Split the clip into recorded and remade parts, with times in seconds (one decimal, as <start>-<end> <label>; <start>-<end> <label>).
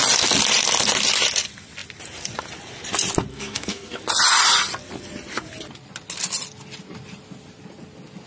0.0-3.3 recorded; 3.3-4.0 remade; 4.0-8.3 recorded